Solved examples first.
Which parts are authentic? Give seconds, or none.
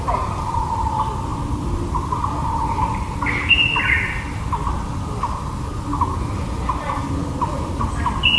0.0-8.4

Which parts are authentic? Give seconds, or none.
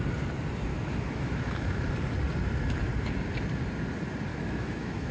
0.0-0.7; 1.9-4.3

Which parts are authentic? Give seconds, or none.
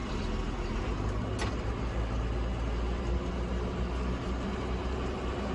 0.0-5.5